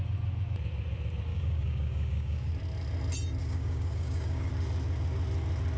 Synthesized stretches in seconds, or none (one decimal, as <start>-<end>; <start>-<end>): 1.3-2.5; 3.4-4.5